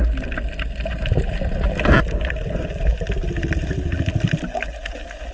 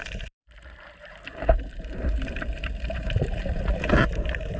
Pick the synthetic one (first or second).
second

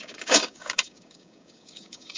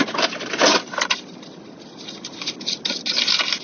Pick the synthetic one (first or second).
first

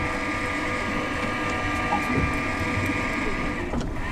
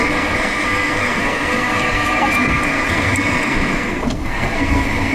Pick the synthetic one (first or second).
second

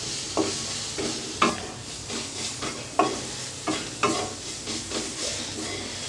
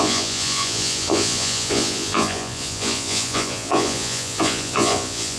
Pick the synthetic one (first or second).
second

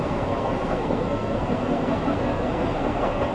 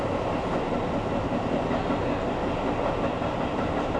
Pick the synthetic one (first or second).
first